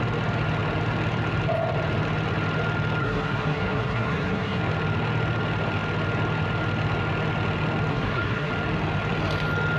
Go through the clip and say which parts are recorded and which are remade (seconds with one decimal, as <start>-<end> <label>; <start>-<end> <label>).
0.0-3.0 recorded; 3.0-4.6 remade; 4.6-7.9 recorded; 7.9-8.5 remade; 8.5-9.8 recorded